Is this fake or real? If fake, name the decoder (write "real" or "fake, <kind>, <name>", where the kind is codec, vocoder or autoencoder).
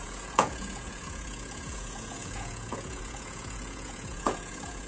fake, vocoder, Vocos